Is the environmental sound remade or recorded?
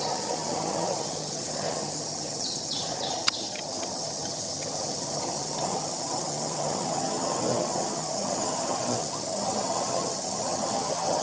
remade